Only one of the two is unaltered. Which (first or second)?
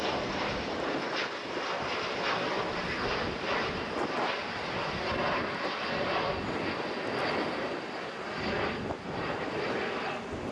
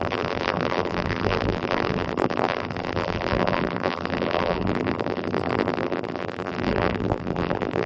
first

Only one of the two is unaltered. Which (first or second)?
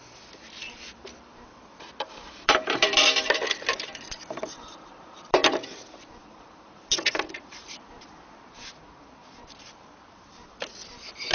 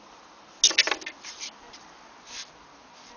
second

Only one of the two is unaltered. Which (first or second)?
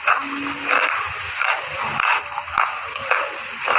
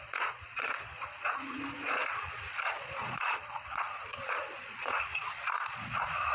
first